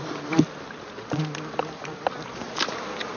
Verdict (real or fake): real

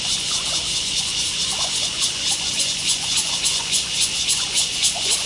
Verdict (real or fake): fake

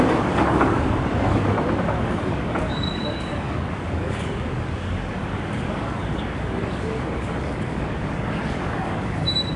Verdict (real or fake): fake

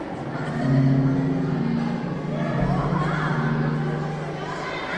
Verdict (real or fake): real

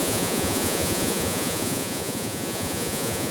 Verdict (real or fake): fake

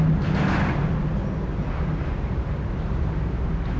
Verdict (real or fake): real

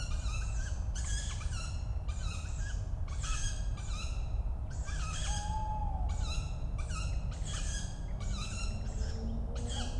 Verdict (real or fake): real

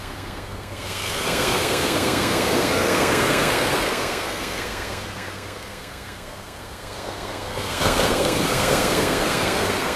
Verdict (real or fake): fake